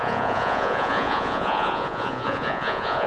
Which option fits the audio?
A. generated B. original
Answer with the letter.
A